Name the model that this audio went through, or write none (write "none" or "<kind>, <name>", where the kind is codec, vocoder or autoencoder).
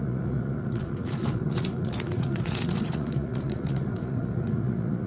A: vocoder, Vocos